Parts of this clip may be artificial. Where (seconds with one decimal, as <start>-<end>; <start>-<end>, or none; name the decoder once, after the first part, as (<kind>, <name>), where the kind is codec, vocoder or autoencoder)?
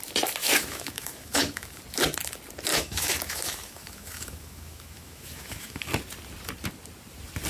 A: 0.4-1.8 (autoencoder, DAC-VAE); 2.7-5.9